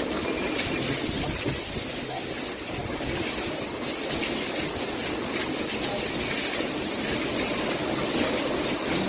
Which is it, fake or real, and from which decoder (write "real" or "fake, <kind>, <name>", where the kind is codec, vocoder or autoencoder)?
real